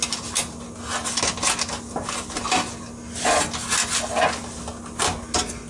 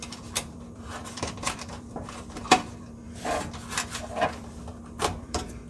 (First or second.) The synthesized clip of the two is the second